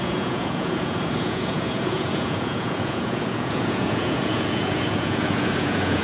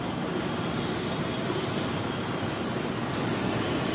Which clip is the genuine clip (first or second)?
second